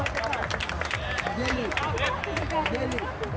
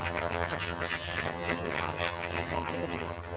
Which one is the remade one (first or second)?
second